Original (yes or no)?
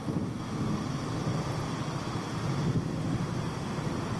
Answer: yes